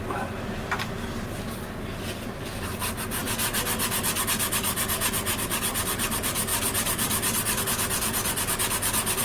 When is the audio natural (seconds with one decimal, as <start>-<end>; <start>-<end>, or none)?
0.0-9.2